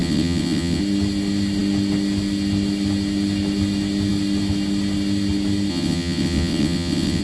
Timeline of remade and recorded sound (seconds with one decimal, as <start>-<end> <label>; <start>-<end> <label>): 0.0-0.8 remade; 0.8-5.7 recorded; 5.7-7.2 remade